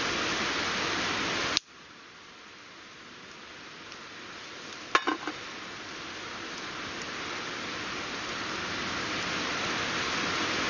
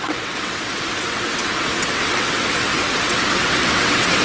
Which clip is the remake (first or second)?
second